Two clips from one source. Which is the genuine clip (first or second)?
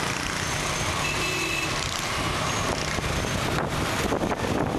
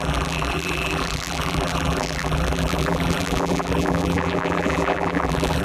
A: first